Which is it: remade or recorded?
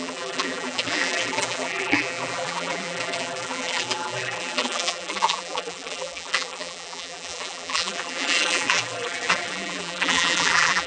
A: remade